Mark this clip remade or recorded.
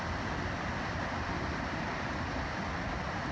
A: recorded